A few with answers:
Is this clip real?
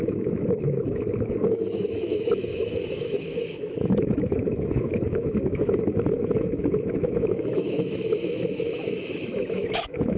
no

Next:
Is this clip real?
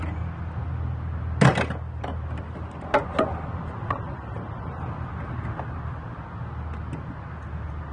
yes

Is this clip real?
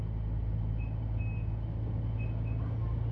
yes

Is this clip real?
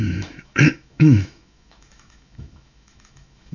no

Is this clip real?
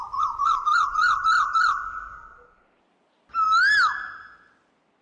yes